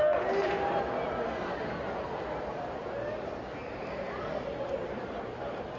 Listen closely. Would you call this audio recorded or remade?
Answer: recorded